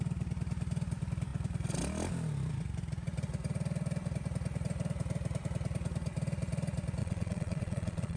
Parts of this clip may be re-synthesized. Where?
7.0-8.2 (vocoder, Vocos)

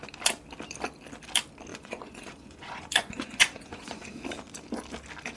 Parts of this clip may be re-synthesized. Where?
1.7-4.2 (vocoder, Vocos)

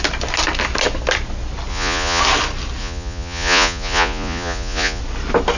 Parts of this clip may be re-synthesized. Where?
1.7-2.2 (vocoder, Vocos); 2.8-5.0

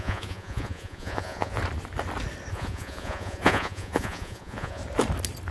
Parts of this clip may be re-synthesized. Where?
0.0-1.6 (vocoder, Vocos); 2.5-4.8

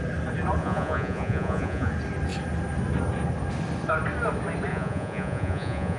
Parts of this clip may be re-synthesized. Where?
0.6-1.9 (vocoder, Vocos); 4.7-6.0

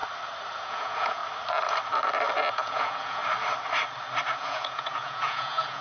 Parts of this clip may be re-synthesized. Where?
0.6-1.2 (vocoder, Vocos); 2.5-3.2; 4.4-5.8

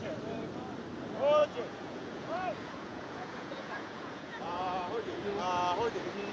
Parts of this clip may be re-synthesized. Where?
1.4-5.2 (vocoder, Vocos)

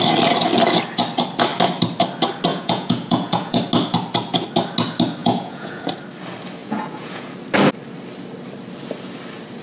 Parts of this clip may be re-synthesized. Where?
2.5-3.6 (vocoder, Vocos); 5.2-5.8; 6.6-7.3